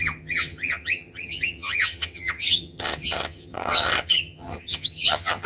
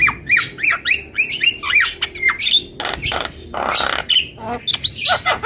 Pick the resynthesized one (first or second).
first